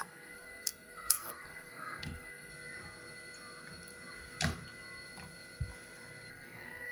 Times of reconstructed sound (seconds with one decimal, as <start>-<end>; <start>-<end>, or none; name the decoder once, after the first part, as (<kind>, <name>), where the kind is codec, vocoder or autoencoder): 0.0-2.5 (codec, SNAC); 6.3-6.9